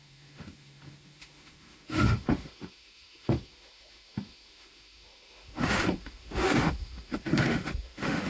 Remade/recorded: remade